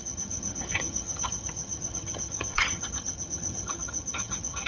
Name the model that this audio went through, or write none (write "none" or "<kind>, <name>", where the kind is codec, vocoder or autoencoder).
vocoder, HiFi-GAN